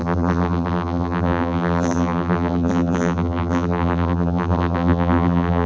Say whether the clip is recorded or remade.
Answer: remade